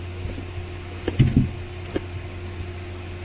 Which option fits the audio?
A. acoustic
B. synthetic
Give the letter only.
A